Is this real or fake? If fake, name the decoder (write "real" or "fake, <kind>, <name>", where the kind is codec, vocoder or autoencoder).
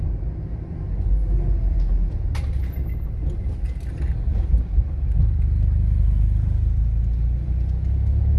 real